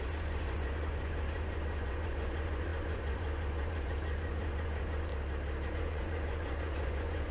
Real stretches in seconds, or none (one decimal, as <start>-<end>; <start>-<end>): 5.1-5.7